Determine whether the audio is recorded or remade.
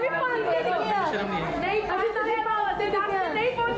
recorded